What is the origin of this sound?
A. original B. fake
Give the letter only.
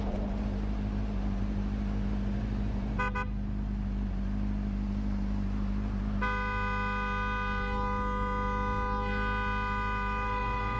A